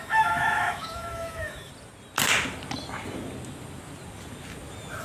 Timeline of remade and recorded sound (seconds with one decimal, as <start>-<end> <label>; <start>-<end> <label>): 0.0-1.7 remade; 1.7-5.0 recorded

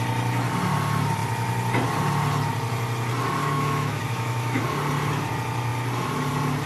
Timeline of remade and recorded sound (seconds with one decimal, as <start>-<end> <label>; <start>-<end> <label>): 0.0-3.4 recorded; 3.4-4.6 remade; 4.6-6.7 recorded

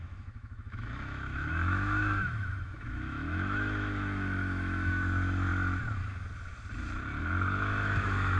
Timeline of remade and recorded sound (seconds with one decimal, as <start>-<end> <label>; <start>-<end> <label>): 0.0-5.5 remade; 5.5-7.2 recorded; 7.2-8.4 remade